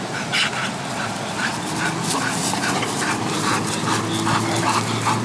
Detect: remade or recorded recorded